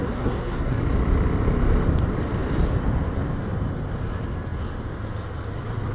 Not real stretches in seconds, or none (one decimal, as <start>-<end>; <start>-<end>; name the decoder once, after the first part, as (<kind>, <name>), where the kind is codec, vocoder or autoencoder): 0.0-0.8 (codec, SNAC)